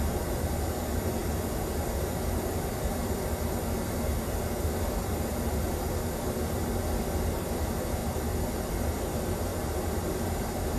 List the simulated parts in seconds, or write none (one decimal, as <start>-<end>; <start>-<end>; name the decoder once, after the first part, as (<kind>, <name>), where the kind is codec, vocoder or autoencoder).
0.0-8.0 (vocoder, BigVGAN v2); 8.7-10.8